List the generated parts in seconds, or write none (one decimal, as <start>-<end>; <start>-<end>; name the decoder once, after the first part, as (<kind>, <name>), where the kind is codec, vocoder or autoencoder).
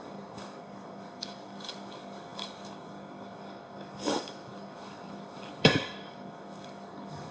0.0-7.3 (codec, DAC)